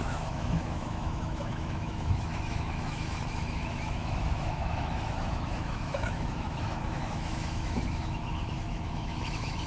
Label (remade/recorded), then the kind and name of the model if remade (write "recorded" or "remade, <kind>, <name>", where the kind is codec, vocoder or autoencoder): remade, autoencoder, DAC-VAE